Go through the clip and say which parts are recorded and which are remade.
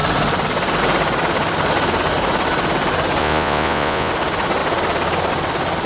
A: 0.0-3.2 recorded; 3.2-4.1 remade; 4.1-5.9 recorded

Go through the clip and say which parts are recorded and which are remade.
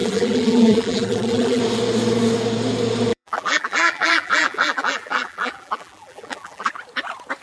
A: 0.0-1.6 remade; 1.6-3.1 recorded; 3.1-6.7 remade; 6.7-7.4 recorded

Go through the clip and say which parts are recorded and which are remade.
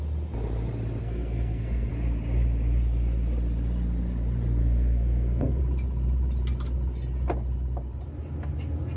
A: 0.0-1.0 recorded; 1.0-1.9 remade; 1.9-4.6 recorded; 4.6-5.6 remade; 5.6-9.0 recorded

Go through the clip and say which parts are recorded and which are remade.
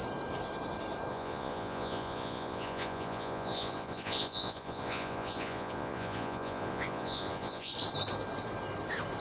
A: 0.0-1.1 recorded; 1.1-7.7 remade; 7.7-9.2 recorded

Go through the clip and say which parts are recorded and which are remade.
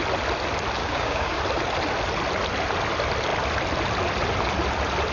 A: 0.0-0.8 recorded; 0.8-1.4 remade; 1.4-5.1 recorded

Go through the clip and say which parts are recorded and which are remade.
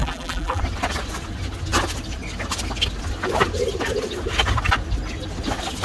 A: 0.0-0.6 remade; 0.6-5.8 recorded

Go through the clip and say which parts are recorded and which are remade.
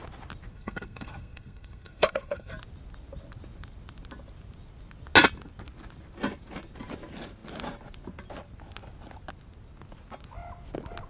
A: 0.0-0.5 recorded; 0.5-2.5 remade; 2.5-11.1 recorded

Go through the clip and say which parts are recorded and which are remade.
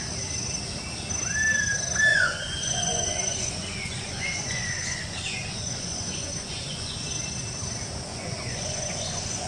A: 0.0-2.1 recorded; 2.1-7.1 remade; 7.1-8.1 recorded; 8.1-9.5 remade